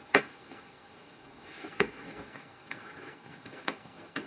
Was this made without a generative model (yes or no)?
no